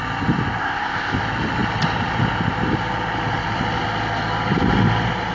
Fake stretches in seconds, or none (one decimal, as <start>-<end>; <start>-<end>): 0.6-1.2